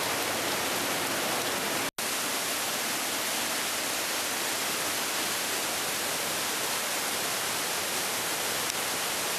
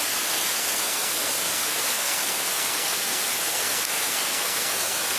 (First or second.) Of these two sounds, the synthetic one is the second